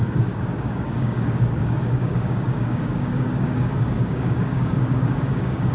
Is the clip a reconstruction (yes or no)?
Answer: yes